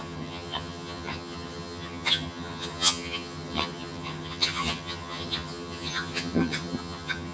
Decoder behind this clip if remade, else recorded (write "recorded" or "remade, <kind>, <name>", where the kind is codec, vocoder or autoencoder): remade, vocoder, HiFi-GAN